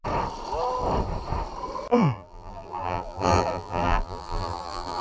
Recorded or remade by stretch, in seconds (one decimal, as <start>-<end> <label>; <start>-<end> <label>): 0.0-1.9 recorded; 1.9-5.0 remade